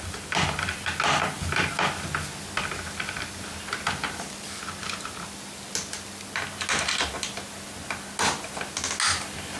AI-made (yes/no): no